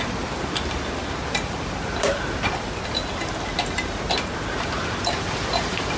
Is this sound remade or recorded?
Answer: recorded